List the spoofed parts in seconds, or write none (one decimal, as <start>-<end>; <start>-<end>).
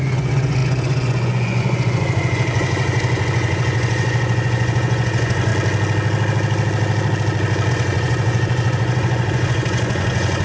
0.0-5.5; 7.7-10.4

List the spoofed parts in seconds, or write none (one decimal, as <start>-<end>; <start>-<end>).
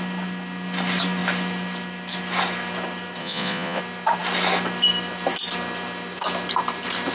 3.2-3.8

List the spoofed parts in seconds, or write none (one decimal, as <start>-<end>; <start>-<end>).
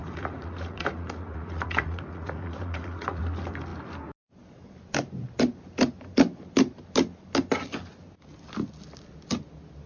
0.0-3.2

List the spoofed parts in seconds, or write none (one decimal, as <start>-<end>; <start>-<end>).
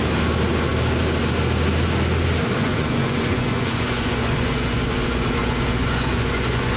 2.6-6.8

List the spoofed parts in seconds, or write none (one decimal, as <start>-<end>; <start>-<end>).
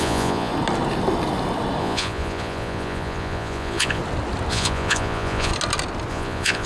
0.0-0.5; 1.8-4.0; 4.5-5.5; 6.1-6.7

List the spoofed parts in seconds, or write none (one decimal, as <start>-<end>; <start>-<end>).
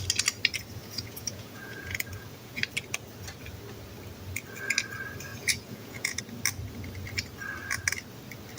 0.8-2.6; 5.3-6.2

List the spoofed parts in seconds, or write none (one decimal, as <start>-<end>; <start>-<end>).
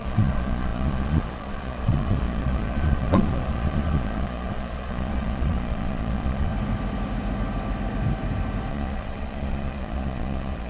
0.0-6.5; 8.7-10.7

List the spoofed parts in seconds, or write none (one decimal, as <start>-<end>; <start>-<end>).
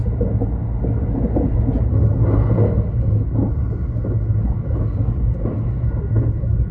none